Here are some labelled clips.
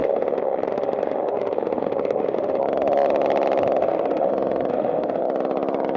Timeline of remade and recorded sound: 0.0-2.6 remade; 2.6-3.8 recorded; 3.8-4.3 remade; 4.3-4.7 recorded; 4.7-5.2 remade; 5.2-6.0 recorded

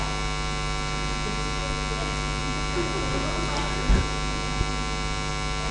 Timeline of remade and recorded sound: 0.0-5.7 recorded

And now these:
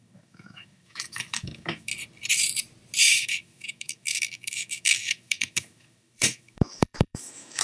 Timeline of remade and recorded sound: 0.0-1.9 remade; 1.9-3.0 recorded; 3.0-7.6 remade